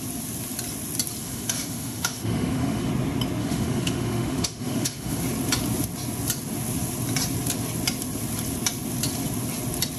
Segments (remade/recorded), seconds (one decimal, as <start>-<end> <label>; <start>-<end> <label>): 0.0-1.2 recorded; 1.2-2.9 remade; 2.9-3.4 recorded; 3.4-5.2 remade; 5.2-10.0 recorded